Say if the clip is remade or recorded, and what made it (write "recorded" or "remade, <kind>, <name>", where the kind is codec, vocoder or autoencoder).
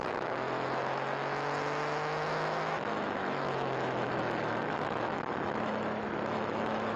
remade, autoencoder, DAC-VAE